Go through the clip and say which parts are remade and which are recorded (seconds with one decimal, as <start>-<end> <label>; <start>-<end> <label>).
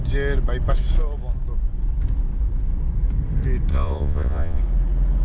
0.0-3.7 recorded; 3.7-4.6 remade; 4.6-5.2 recorded